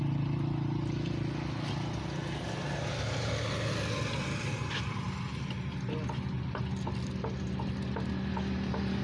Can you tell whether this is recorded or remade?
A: recorded